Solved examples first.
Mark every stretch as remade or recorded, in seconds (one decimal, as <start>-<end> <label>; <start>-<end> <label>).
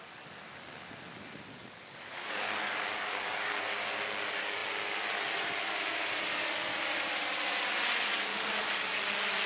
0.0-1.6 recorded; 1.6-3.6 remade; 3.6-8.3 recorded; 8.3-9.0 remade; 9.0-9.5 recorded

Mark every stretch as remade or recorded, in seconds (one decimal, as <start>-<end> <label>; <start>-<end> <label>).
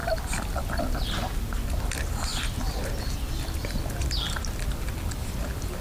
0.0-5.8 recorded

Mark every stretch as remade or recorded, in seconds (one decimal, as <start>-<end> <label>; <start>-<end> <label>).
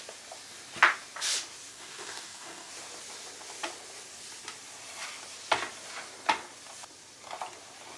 0.0-1.7 recorded; 1.7-2.7 remade; 2.7-8.0 recorded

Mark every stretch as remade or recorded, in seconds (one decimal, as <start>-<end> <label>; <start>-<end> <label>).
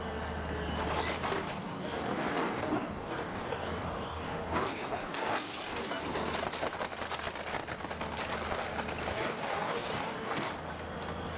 0.0-1.6 recorded; 1.6-6.0 remade; 6.0-9.1 recorded; 9.1-10.5 remade; 10.5-11.4 recorded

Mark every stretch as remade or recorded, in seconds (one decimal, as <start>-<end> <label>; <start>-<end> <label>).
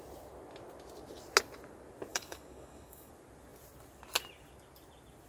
0.0-2.1 recorded; 2.1-3.1 remade; 3.1-5.3 recorded